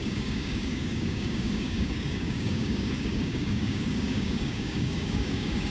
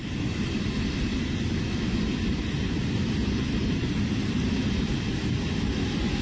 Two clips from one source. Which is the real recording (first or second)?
second